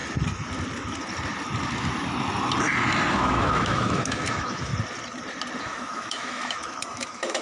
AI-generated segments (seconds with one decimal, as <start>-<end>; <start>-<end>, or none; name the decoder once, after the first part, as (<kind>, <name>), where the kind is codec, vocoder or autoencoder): 3.1-4.7 (autoencoder, DAC-VAE); 5.6-7.4